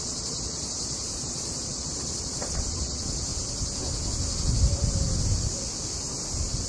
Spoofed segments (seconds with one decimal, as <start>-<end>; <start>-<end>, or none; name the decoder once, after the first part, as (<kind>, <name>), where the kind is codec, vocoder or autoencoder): 0.0-3.3 (vocoder, Vocos)